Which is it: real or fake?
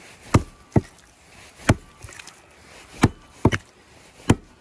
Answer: real